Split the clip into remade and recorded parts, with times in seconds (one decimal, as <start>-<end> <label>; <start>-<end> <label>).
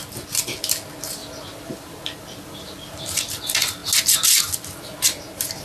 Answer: 0.0-1.2 recorded; 1.2-3.2 remade; 3.2-5.6 recorded